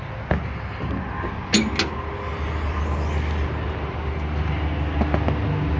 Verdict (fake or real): real